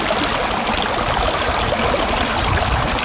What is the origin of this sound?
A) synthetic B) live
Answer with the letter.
B